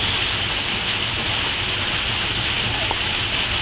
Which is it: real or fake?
real